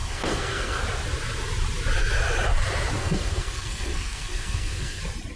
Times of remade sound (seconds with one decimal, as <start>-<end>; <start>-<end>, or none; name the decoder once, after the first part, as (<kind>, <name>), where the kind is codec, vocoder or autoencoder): 0.0-0.8 (codec, SNAC); 3.0-5.0